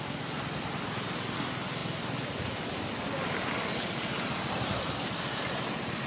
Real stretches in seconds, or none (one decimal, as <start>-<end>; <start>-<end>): 0.0-6.1